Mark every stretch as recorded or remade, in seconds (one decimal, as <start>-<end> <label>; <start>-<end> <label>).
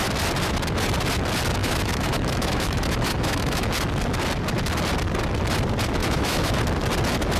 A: 0.0-1.6 recorded; 1.6-3.7 remade; 3.7-6.0 recorded; 6.0-6.5 remade; 6.5-7.4 recorded